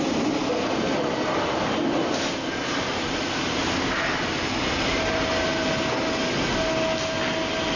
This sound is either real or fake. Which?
real